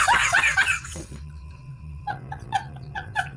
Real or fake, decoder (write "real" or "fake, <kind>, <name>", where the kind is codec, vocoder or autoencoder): fake, vocoder, WaveNeXt